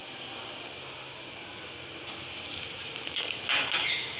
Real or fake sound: real